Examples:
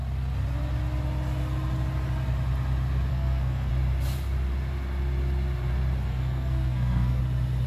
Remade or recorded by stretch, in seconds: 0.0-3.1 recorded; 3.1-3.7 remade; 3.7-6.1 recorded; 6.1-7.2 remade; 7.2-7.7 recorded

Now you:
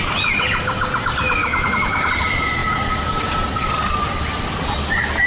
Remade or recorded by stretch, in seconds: 0.0-1.4 recorded; 1.4-2.1 remade; 2.1-5.3 recorded